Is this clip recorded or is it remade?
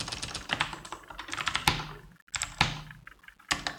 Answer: recorded